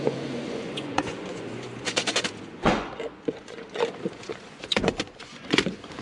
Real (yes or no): no